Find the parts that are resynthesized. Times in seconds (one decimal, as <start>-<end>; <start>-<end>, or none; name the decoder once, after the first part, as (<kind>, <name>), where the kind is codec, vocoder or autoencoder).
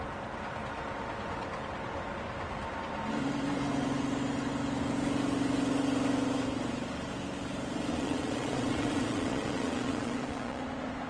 7.9-10.6 (vocoder, Vocos)